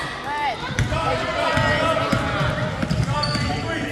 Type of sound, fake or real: real